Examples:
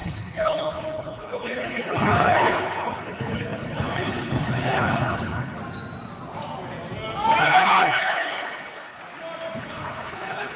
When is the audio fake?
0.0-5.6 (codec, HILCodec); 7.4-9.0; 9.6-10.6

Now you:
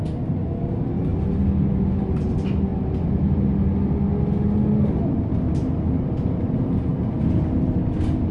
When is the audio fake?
none

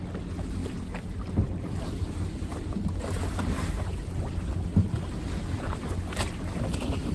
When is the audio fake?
none

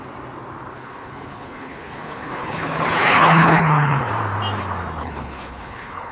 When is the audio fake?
0.7-4.1 (codec, HILCodec); 5.0-6.1